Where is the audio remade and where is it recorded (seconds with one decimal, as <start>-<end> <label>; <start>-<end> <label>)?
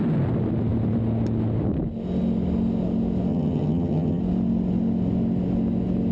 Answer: 0.0-3.3 recorded; 3.3-4.2 remade; 4.2-6.1 recorded